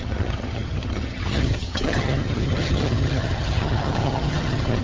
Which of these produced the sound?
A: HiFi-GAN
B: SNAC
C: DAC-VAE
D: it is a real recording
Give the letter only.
A